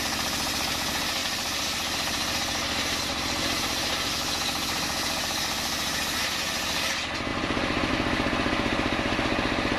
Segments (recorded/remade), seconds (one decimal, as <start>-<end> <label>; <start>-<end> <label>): 0.0-1.2 recorded; 1.2-4.1 remade; 4.1-7.3 recorded; 7.3-7.9 remade; 7.9-9.8 recorded